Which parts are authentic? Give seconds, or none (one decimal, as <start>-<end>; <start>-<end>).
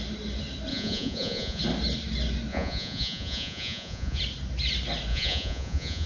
0.0-0.7; 1.6-2.5; 4.2-5.1